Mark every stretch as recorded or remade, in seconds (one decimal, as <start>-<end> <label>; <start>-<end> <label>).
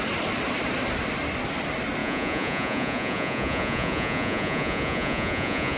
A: 0.0-2.0 recorded; 2.0-5.8 remade